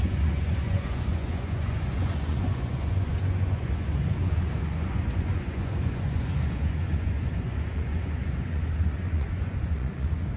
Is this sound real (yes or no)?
no